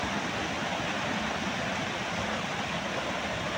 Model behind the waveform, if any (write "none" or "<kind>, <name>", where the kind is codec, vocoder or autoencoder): none